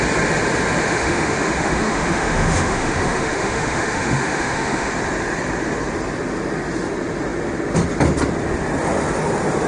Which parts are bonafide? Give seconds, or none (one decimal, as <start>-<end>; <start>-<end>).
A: 0.0-0.8; 4.9-9.7